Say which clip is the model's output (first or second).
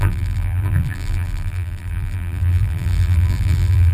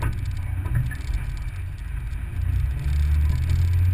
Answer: first